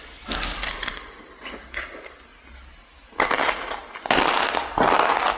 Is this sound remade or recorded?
recorded